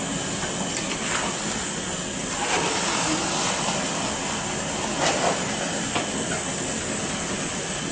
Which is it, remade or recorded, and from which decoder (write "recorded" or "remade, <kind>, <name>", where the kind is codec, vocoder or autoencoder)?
recorded